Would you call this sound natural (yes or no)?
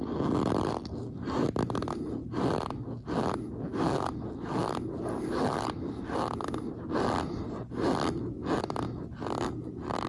yes